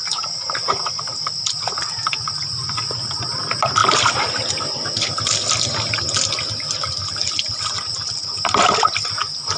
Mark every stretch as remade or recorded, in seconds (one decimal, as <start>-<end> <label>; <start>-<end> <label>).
0.0-9.6 recorded